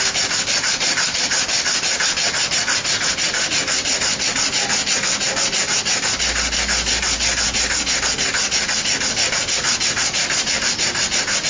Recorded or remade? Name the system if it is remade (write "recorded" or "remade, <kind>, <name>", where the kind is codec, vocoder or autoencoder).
recorded